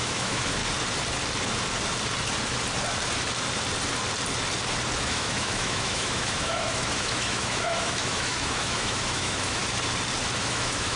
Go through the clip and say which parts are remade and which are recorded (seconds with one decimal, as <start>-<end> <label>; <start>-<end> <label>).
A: 0.0-0.6 remade; 0.6-5.0 recorded; 5.0-9.6 remade; 9.6-10.4 recorded; 10.4-11.0 remade

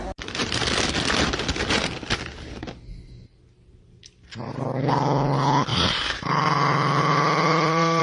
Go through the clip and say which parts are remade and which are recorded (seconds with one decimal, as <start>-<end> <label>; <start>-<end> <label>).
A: 0.0-5.7 recorded; 5.7-8.0 remade

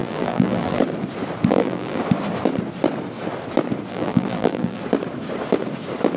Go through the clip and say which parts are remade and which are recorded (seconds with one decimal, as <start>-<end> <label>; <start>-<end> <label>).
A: 0.0-0.8 remade; 0.8-1.5 recorded; 1.5-2.0 remade; 2.0-3.9 recorded; 3.9-4.8 remade; 4.8-6.2 recorded

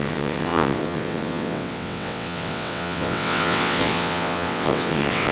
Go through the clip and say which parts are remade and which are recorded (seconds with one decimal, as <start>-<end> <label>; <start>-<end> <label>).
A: 0.0-5.3 remade

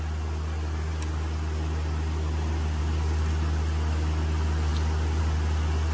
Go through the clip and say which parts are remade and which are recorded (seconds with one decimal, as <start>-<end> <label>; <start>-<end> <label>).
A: 0.0-5.9 recorded